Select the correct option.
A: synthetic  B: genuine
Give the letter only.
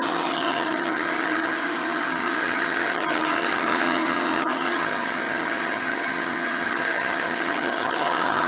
A